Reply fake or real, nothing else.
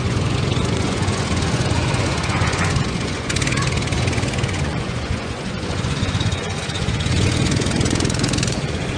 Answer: fake